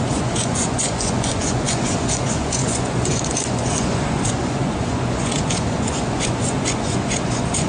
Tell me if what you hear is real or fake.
fake